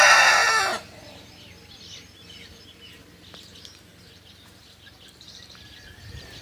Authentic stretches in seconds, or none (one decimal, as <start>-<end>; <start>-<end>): 0.0-3.9